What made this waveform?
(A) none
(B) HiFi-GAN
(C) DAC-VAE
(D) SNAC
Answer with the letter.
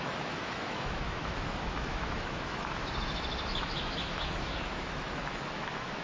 C